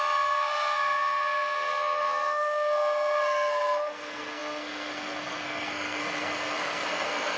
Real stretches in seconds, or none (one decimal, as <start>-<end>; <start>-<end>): none